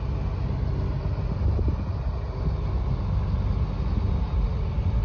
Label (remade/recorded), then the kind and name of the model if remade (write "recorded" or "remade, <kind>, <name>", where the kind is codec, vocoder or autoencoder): recorded